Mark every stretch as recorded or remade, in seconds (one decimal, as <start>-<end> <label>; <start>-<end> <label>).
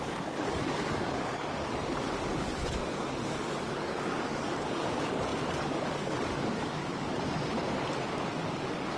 0.0-7.1 remade; 7.1-8.3 recorded; 8.3-9.0 remade